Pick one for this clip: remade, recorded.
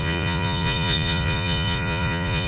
remade